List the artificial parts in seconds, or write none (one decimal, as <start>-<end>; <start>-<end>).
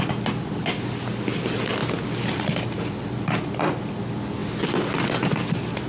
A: none